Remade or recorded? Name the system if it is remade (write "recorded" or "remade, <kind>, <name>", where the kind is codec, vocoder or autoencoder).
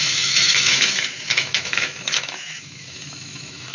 remade, autoencoder, DAC-VAE